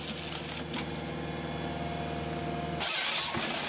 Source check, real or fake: real